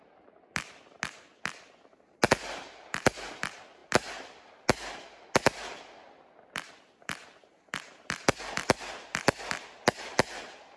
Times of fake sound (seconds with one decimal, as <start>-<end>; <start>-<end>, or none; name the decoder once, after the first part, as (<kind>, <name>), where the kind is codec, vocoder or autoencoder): none